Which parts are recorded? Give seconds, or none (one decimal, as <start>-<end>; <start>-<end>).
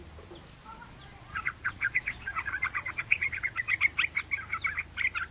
0.0-0.6; 3.8-5.3